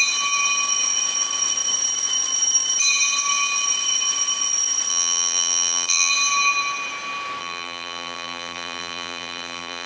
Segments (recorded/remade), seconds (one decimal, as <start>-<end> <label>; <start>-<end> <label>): 0.0-4.9 recorded; 4.9-6.1 remade; 6.1-7.4 recorded; 7.4-9.9 remade